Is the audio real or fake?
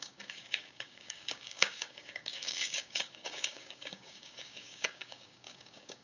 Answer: fake